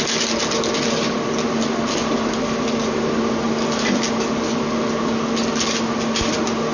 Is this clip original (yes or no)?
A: yes